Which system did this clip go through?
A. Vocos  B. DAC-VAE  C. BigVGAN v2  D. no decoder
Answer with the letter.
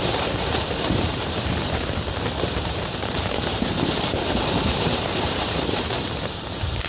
C